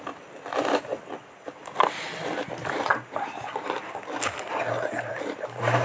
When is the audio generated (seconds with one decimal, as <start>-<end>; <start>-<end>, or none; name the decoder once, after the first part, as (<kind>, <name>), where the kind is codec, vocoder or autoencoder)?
none